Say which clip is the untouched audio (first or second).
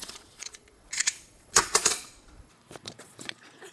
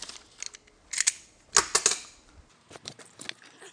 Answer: second